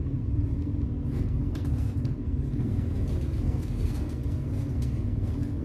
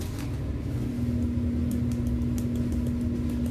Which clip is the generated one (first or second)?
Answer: first